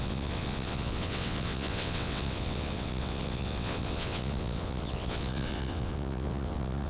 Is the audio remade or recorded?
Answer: remade